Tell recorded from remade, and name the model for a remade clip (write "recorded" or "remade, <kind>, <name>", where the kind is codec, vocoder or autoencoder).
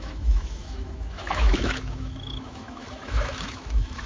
remade, autoencoder, DAC-VAE